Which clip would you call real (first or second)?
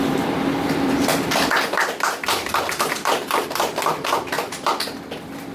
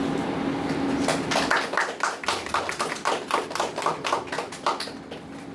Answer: second